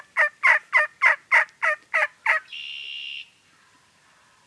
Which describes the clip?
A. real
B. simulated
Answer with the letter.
A